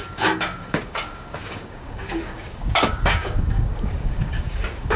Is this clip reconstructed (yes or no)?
yes